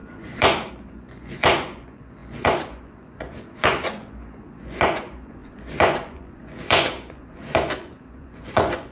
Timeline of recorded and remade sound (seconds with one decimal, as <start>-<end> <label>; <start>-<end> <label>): 0.0-8.9 remade